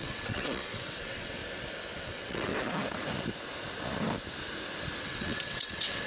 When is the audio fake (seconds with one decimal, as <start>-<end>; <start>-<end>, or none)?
0.0-1.4; 2.0-2.5; 5.0-6.1